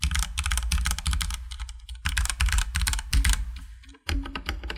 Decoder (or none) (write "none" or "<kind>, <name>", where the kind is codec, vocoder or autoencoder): none